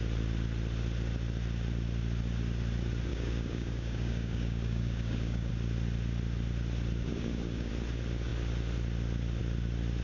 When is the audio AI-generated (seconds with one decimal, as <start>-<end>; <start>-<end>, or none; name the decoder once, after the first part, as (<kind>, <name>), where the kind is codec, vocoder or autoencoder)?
3.1-5.5 (codec, DAC); 7.1-7.7